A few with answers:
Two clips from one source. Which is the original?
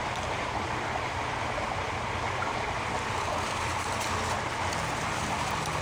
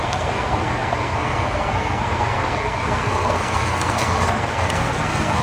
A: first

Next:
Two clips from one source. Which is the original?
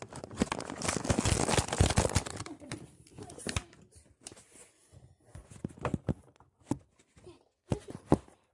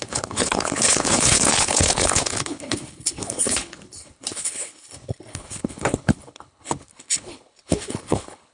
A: first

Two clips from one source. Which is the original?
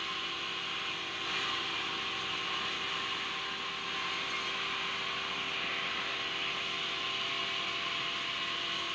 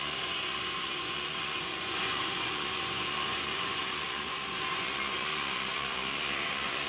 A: first